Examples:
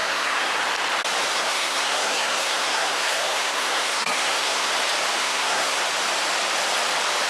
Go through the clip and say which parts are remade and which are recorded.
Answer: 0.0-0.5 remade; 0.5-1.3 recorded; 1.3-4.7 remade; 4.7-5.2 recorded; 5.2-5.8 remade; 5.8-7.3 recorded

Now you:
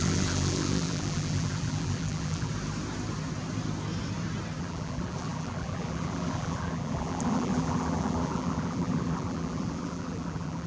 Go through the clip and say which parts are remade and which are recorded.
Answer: 0.0-2.5 remade; 2.5-4.6 recorded; 4.6-10.7 remade